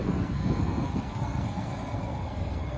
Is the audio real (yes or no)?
no